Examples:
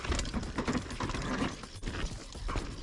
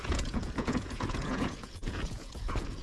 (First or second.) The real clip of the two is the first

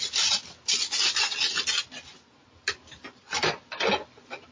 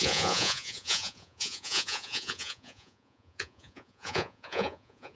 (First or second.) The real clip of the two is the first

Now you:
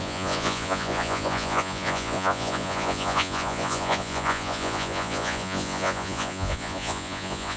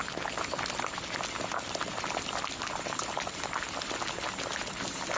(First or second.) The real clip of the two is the second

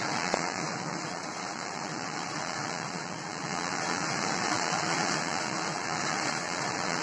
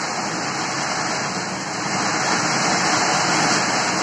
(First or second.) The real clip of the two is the second